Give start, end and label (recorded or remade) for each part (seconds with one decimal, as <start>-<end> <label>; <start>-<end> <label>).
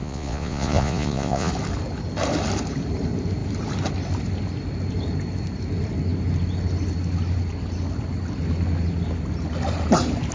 0.0-1.5 remade; 1.5-10.3 recorded